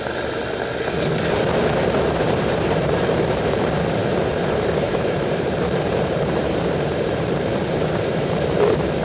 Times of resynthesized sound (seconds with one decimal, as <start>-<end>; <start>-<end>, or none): 1.8-3.6; 4.0-7.9